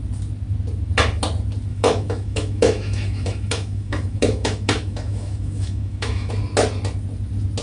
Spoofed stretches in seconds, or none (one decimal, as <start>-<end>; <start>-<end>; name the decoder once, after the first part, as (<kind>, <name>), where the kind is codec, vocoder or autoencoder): 1.7-6.3 (autoencoder, DAC-VAE)